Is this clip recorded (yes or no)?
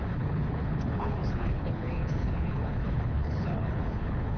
no